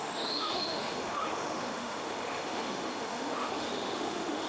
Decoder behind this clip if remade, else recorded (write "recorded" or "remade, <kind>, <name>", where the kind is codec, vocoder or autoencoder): remade, autoencoder, DAC-VAE